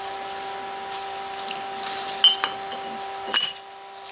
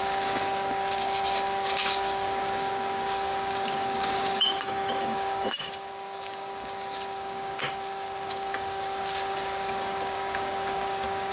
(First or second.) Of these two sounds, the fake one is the second